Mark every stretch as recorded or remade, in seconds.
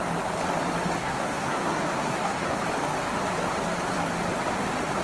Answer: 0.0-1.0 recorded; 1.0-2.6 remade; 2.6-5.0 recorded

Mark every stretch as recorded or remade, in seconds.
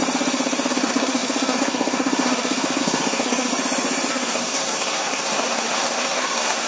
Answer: 0.0-0.7 recorded; 0.7-3.5 remade; 3.5-4.1 recorded; 4.1-6.7 remade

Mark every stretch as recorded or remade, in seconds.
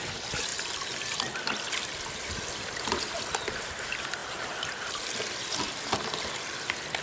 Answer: 0.0-7.0 recorded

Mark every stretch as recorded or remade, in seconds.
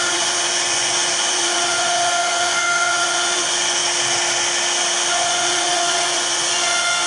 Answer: 0.0-3.8 remade; 3.8-5.1 recorded; 5.1-7.1 remade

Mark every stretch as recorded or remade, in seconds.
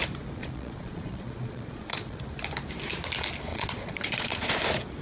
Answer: 0.0-0.4 recorded; 0.4-2.2 remade; 2.2-3.5 recorded; 3.5-4.5 remade; 4.5-5.0 recorded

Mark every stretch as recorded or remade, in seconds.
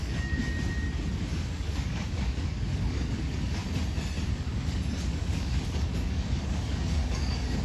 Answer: 0.0-0.4 remade; 0.4-1.2 recorded; 1.2-3.6 remade; 3.6-4.3 recorded; 4.3-7.6 remade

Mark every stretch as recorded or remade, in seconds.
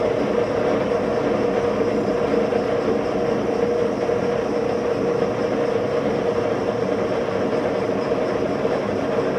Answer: 0.0-9.4 recorded